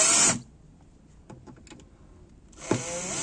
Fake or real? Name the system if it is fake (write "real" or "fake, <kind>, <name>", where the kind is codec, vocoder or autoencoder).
real